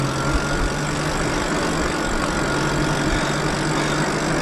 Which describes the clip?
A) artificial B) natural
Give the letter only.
B